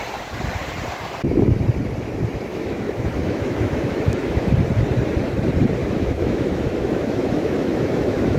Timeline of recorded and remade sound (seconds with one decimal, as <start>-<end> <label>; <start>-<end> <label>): 0.0-2.5 recorded; 2.5-4.5 remade; 4.5-5.8 recorded; 5.8-8.4 remade